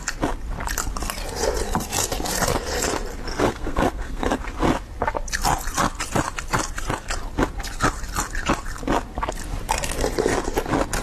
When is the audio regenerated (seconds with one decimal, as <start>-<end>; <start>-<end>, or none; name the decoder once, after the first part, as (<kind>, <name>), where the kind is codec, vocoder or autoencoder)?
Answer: 3.3-4.4 (codec, SNAC)